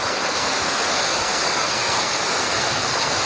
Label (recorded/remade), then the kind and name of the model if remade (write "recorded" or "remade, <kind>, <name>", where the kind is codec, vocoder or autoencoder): remade, codec, SNAC